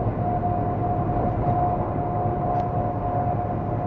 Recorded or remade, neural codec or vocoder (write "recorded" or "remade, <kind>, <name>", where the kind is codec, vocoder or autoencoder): recorded